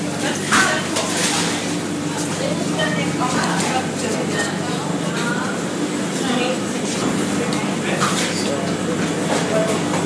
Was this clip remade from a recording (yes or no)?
no